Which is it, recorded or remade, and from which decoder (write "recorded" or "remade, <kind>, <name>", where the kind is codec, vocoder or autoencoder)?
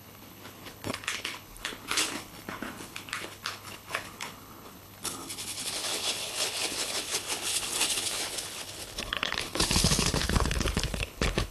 remade, codec, HILCodec